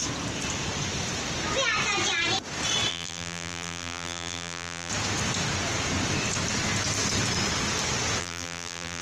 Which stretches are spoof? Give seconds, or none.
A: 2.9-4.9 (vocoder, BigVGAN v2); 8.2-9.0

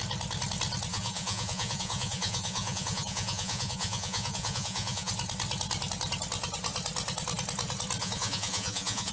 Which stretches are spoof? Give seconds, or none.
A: 0.9-5.1 (vocoder, Vocos); 8.0-9.1

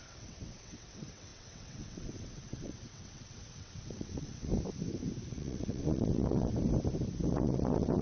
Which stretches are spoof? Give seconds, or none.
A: 0.0-4.5 (vocoder, WaveNeXt); 5.3-6.5; 7.3-8.0

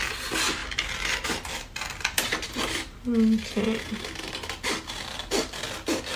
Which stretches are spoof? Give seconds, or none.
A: none